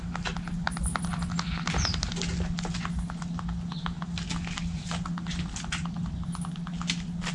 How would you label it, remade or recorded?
recorded